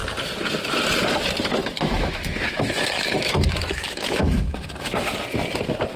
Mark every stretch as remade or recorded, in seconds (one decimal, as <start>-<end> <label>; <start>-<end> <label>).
0.0-1.6 recorded; 1.6-4.7 remade; 4.7-6.0 recorded